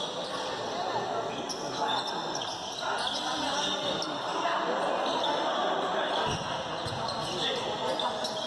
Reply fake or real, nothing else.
real